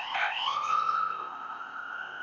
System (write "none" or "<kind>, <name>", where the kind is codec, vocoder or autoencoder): codec, ZipCodec